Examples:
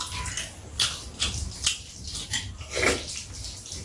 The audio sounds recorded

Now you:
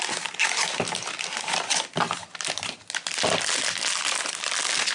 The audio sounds recorded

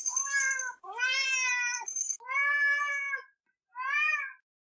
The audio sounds recorded